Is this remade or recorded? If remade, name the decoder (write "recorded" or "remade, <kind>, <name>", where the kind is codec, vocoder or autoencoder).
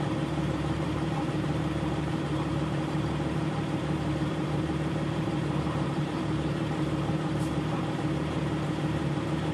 remade, vocoder, BigVGAN v2